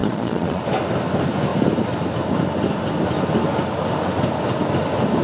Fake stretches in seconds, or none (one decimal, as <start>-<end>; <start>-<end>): 0.0-0.6